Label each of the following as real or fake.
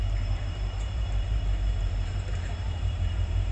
fake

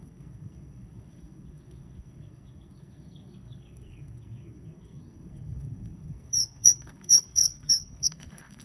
fake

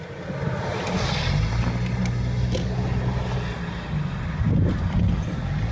real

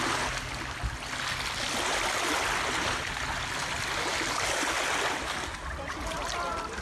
real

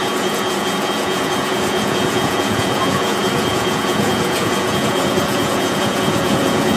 fake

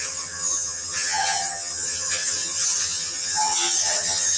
fake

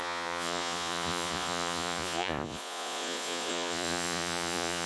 fake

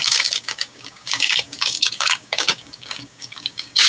fake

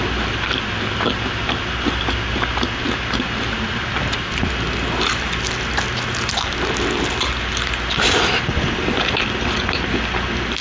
real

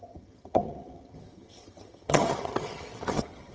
fake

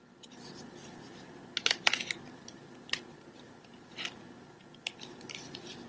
real